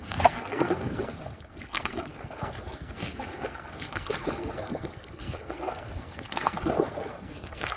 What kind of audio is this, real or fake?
fake